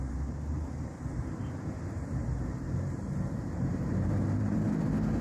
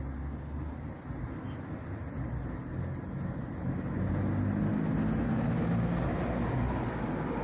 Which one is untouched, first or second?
second